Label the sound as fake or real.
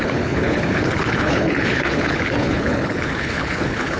fake